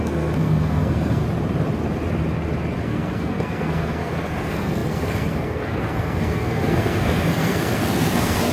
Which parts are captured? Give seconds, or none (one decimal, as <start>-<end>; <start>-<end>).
1.2-2.8